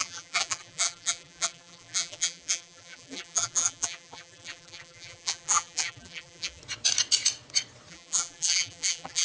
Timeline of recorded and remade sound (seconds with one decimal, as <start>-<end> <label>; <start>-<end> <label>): 0.0-6.6 remade; 6.6-7.9 recorded; 7.9-9.2 remade